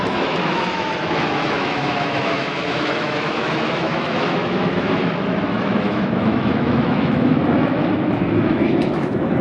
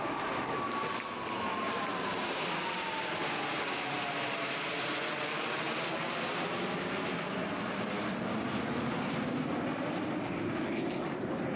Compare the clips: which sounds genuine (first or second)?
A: second